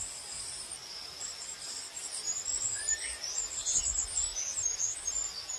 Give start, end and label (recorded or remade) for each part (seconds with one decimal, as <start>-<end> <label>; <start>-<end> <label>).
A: 0.0-4.3 remade; 4.3-5.1 recorded; 5.1-5.6 remade